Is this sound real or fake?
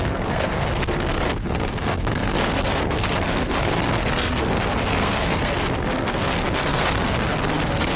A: fake